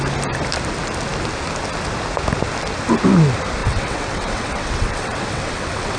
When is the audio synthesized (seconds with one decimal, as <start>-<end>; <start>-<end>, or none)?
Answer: 3.6-6.0